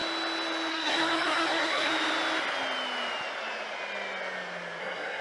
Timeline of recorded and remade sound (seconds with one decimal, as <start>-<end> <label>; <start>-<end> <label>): 0.0-0.7 recorded; 0.7-1.9 remade; 1.9-4.8 recorded; 4.8-5.2 remade